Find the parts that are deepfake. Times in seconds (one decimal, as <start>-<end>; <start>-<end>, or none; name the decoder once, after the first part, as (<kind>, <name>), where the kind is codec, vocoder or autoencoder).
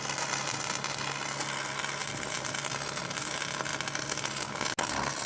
none